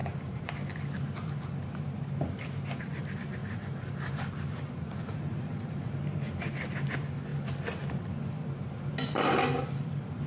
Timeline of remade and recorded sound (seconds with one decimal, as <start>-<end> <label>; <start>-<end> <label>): 0.0-0.5 remade; 0.5-3.4 recorded; 3.4-6.0 remade; 6.0-10.3 recorded